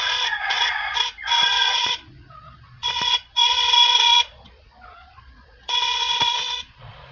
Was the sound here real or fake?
fake